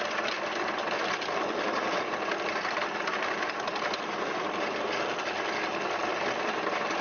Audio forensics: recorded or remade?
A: recorded